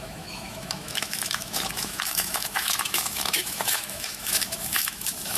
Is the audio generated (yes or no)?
yes